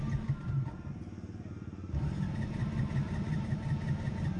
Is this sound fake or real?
real